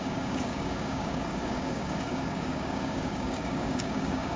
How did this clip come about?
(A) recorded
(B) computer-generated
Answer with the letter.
B